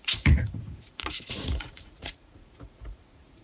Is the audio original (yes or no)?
no